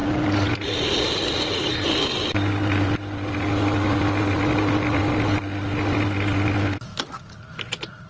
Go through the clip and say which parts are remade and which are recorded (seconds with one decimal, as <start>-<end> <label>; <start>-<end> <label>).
0.0-8.1 recorded